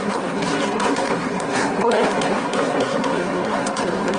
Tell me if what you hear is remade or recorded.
remade